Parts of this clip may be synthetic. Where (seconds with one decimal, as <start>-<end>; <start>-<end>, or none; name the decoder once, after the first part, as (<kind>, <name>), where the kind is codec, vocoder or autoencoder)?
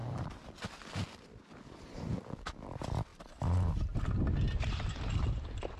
0.0-0.5 (vocoder, BigVGAN v2); 3.1-4.0